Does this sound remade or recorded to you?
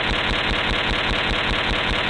recorded